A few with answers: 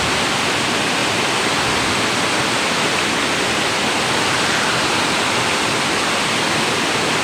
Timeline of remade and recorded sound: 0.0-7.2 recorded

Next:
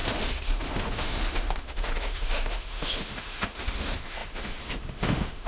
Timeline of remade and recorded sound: 0.0-5.5 remade

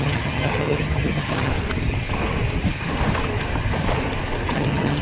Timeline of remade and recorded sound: 0.0-1.5 remade; 1.5-4.5 recorded; 4.5-5.0 remade

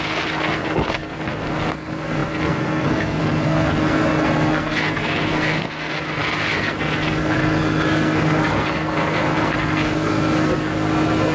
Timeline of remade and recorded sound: 0.0-11.3 remade

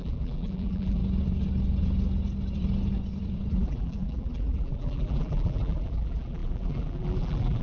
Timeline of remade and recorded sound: 0.0-1.0 remade; 1.0-3.5 recorded; 3.5-7.6 remade

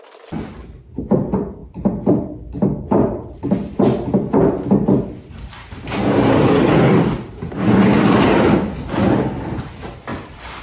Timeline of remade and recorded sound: 0.0-10.1 recorded; 10.1-10.6 remade